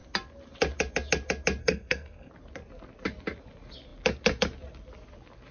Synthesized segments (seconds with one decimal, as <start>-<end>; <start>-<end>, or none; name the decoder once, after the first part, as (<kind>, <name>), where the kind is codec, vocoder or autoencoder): 1.6-2.3 (codec, SNAC)